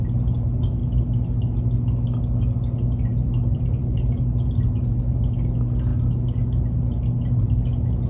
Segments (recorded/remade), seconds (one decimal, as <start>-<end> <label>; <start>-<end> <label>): 0.0-3.1 recorded; 3.1-4.2 remade; 4.2-8.1 recorded